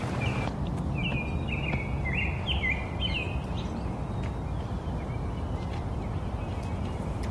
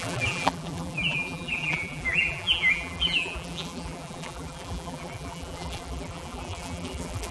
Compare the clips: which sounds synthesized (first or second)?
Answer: second